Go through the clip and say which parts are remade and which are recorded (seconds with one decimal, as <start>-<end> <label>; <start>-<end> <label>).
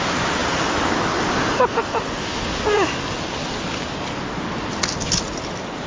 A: 0.0-5.9 recorded